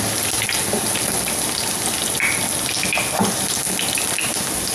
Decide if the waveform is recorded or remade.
recorded